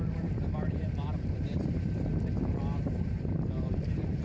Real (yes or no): no